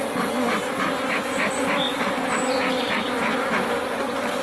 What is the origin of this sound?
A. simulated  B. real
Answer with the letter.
B